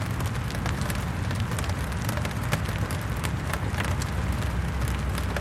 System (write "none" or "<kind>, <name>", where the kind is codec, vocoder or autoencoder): none